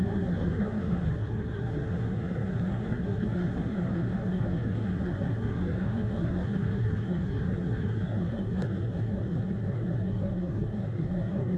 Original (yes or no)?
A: no